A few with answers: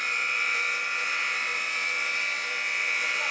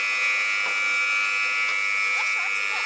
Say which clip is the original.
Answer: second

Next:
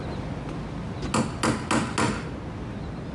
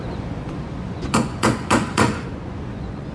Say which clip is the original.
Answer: first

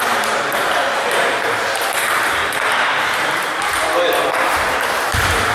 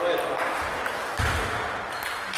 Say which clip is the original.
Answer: second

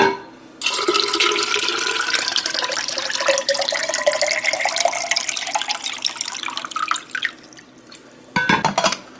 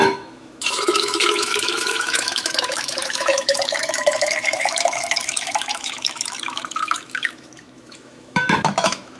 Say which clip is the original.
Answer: first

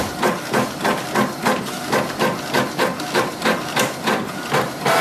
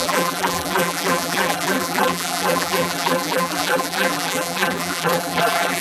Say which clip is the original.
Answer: first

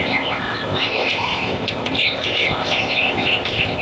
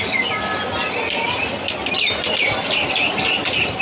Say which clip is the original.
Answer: second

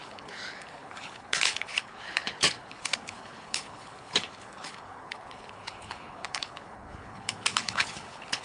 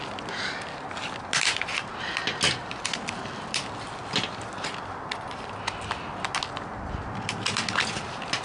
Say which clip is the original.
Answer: second